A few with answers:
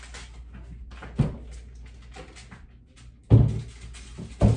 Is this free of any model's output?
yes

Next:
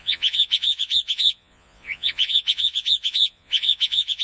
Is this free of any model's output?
no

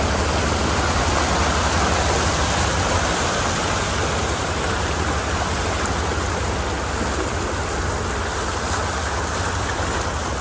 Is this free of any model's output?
yes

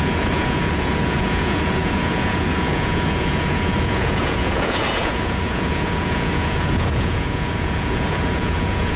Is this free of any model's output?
no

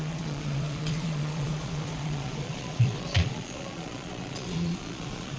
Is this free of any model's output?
no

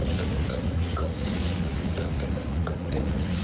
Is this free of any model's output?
no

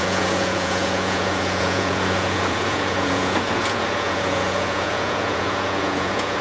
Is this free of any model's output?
no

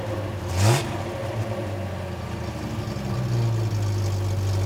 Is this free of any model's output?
yes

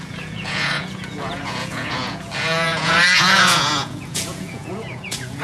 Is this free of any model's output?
no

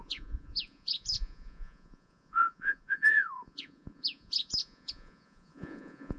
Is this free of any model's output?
no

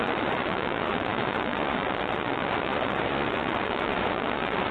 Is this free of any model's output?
no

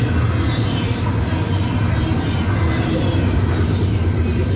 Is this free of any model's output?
yes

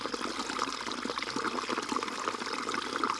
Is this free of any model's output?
yes